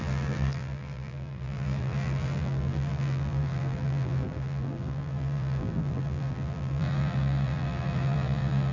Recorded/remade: remade